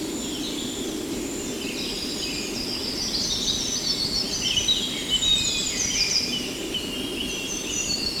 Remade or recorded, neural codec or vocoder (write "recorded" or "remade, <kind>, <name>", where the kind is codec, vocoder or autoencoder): recorded